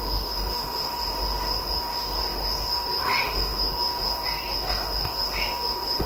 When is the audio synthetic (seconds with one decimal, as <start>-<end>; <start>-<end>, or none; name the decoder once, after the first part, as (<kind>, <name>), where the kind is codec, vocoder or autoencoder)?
0.0-6.1 (autoencoder, DAC-VAE)